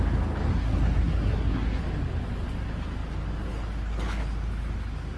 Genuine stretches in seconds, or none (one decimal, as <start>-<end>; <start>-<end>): 0.0-0.5; 1.8-5.2